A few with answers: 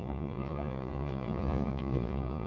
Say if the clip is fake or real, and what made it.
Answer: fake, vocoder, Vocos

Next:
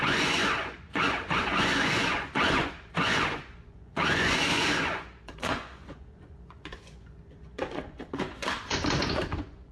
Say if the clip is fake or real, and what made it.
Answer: fake, vocoder, Vocos